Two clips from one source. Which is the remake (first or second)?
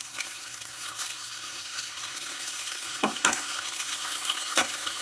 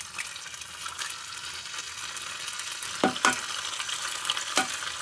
first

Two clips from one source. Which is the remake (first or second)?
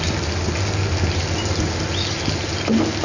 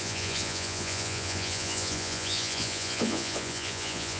second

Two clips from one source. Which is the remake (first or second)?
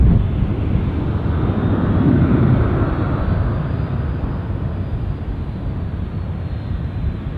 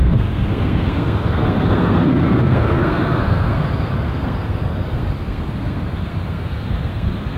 second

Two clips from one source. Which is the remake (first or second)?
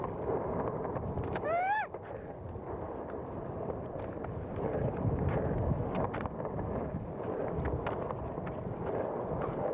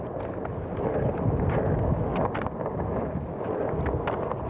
first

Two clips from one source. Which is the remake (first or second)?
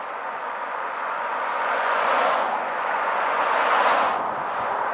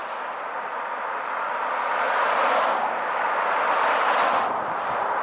first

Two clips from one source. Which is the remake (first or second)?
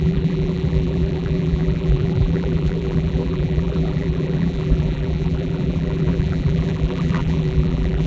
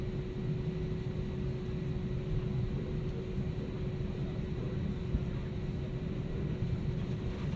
first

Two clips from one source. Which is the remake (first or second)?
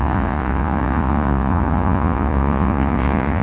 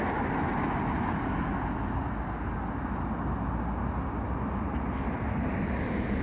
first